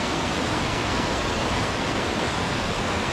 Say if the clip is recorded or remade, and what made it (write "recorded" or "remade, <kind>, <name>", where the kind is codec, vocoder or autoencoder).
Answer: remade, codec, SNAC